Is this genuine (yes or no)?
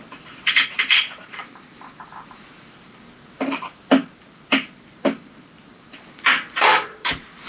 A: no